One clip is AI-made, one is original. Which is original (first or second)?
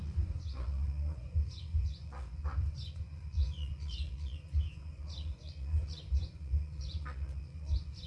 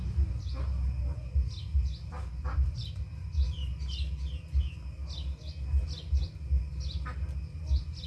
second